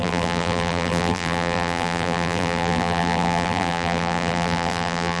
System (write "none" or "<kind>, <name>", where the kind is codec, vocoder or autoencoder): vocoder, BigVGAN v2